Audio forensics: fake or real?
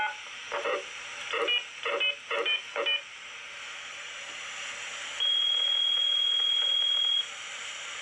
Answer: real